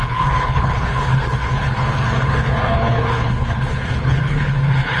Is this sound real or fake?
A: fake